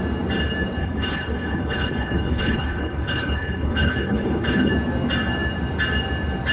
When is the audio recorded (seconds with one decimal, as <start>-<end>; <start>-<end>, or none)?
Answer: 0.0-0.8; 4.7-6.5